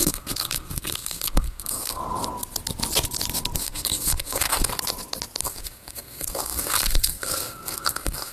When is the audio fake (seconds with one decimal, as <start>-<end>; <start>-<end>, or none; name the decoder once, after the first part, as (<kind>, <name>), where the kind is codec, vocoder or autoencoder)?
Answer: 0.0-2.0 (codec, SNAC); 3.6-4.7; 5.4-8.3